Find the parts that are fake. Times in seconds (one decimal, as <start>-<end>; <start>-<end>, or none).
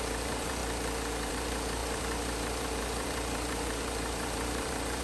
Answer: 0.0-0.6; 1.3-5.0